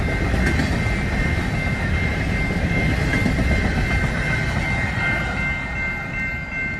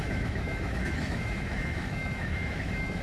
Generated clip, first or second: second